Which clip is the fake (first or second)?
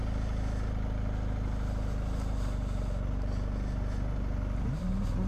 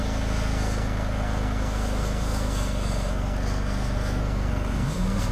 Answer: second